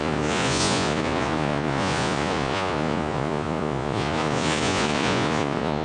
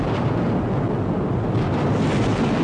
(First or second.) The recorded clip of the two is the second